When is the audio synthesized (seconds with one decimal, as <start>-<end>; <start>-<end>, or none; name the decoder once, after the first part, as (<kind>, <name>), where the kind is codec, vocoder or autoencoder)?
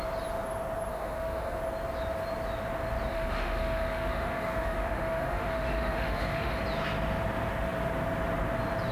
0.9-1.6 (autoencoder, DAC-VAE); 3.1-6.6